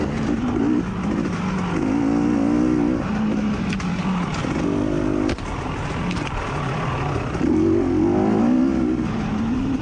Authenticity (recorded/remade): recorded